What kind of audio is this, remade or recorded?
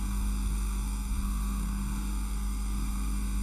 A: remade